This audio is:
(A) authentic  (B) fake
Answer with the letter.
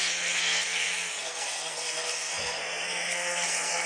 B